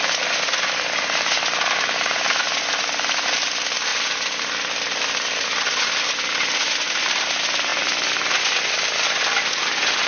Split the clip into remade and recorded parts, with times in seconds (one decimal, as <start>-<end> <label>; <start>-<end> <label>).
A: 0.0-3.9 recorded; 3.9-6.0 remade; 6.0-7.7 recorded; 7.7-8.6 remade; 8.6-10.1 recorded